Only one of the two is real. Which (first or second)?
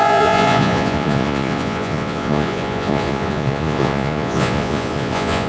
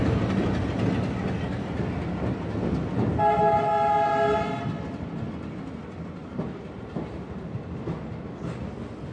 second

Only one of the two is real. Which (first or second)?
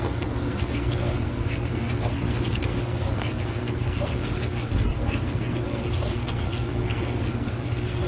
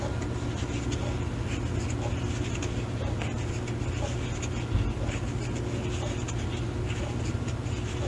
second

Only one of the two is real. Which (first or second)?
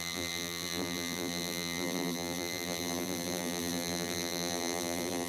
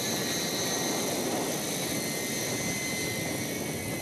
second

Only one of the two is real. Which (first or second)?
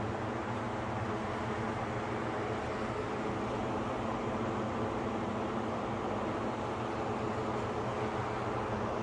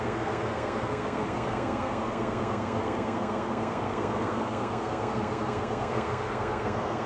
first